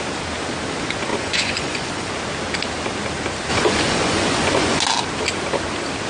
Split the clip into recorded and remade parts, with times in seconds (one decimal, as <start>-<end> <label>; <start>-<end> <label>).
0.0-1.1 recorded; 1.1-2.1 remade; 2.1-3.5 recorded; 3.5-4.8 remade; 4.8-6.1 recorded